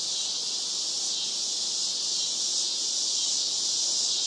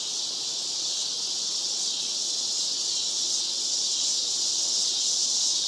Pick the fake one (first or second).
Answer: second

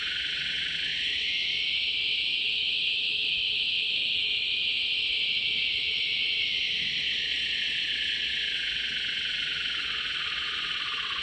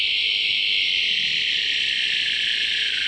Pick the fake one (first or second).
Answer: first